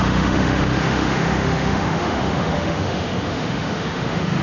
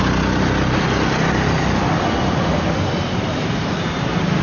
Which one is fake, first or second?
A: first